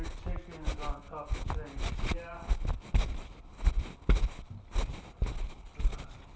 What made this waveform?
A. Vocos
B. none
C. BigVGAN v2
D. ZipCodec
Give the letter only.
B